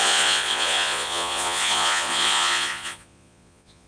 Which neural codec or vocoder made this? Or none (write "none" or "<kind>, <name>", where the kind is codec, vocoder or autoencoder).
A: vocoder, Vocos